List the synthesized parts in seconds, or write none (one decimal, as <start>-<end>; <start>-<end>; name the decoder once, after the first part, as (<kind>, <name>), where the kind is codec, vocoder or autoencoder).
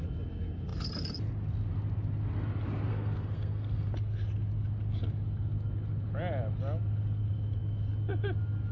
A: 2.9-3.9 (codec, SNAC)